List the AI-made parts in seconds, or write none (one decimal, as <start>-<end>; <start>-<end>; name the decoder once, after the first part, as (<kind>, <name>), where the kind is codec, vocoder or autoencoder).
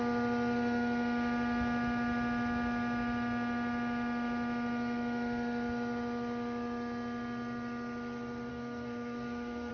8.5-9.7 (codec, SNAC)